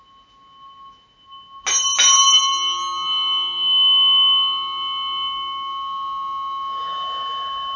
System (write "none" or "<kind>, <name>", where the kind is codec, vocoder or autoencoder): none